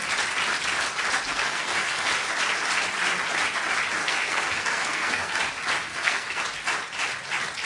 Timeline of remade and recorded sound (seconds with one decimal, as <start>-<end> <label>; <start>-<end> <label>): 0.0-1.3 recorded; 1.3-2.1 remade; 2.1-4.0 recorded; 4.0-5.4 remade; 5.4-5.9 recorded; 5.9-6.4 remade; 6.4-7.6 recorded